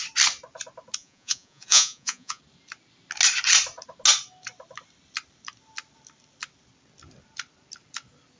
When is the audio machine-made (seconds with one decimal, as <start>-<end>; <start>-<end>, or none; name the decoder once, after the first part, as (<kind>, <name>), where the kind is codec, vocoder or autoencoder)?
1.0-2.4 (vocoder, Vocos)